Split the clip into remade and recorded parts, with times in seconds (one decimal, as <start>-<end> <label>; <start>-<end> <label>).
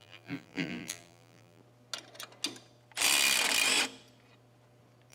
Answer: 0.0-1.6 remade; 1.6-5.1 recorded